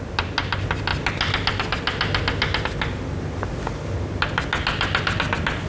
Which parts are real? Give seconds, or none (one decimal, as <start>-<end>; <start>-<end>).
0.0-5.7